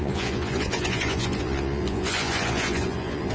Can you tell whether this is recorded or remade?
remade